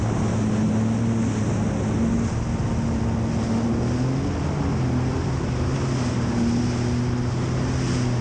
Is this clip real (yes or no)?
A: yes